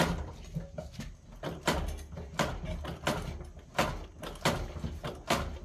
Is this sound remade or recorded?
recorded